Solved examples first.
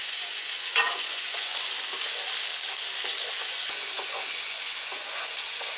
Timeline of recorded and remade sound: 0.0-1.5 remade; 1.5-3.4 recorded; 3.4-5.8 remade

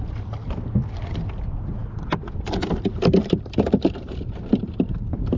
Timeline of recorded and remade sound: 0.0-3.2 recorded; 3.2-4.7 remade; 4.7-5.4 recorded

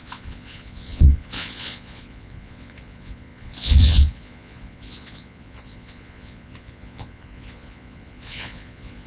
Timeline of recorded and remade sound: 0.0-9.1 remade

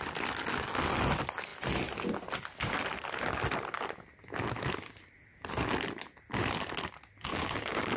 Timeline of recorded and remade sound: 0.0-7.3 recorded; 7.3-8.0 remade

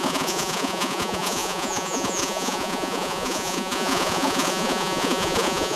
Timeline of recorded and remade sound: 0.0-5.8 remade

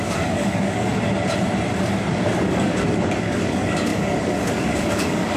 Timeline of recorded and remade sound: 0.0-0.9 remade; 0.9-2.1 recorded; 2.1-5.4 remade

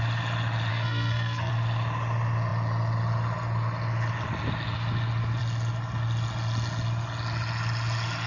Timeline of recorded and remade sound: 0.0-0.7 recorded; 0.7-1.5 remade; 1.5-8.3 recorded